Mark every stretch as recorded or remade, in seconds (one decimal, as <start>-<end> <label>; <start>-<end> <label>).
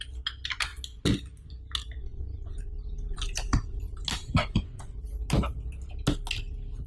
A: 0.0-4.2 recorded; 4.2-4.9 remade; 4.9-6.9 recorded